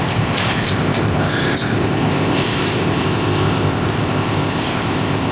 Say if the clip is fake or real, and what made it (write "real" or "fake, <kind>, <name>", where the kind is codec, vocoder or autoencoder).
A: fake, codec, ZipCodec